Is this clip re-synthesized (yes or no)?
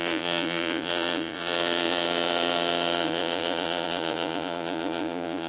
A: yes